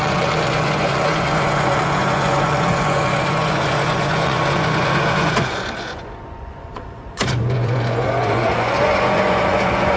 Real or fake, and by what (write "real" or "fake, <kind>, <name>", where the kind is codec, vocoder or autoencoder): fake, vocoder, Vocos